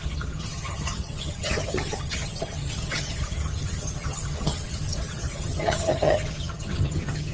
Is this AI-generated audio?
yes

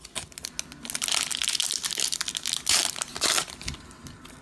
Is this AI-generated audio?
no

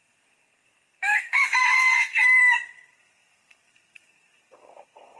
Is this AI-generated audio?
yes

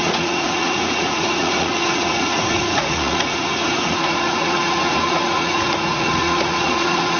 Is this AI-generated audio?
yes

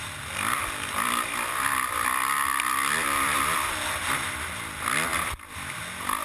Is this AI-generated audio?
no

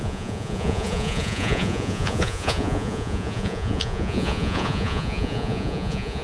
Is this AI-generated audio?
yes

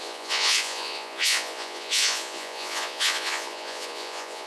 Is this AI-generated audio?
yes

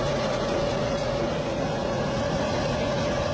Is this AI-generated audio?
yes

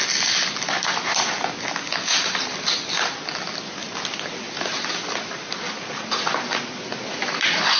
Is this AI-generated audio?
no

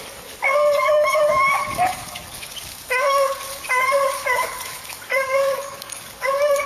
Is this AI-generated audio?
yes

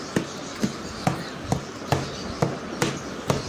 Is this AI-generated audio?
no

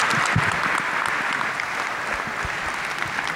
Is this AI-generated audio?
no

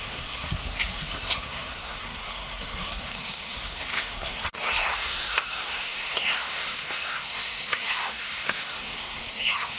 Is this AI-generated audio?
yes